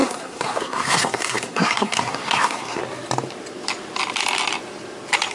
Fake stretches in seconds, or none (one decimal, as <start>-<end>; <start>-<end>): 0.0-2.8